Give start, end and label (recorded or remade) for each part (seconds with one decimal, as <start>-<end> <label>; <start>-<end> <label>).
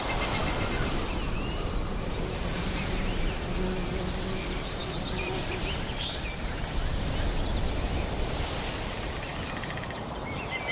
0.0-0.4 recorded; 0.4-4.0 remade; 4.0-4.8 recorded; 4.8-6.0 remade; 6.0-10.7 recorded